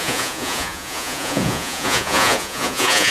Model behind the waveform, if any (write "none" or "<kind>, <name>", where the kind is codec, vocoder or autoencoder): vocoder, Vocos